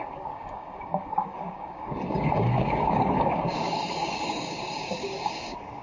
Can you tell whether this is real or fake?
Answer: fake